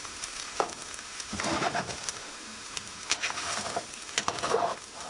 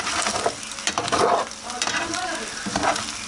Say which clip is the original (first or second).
second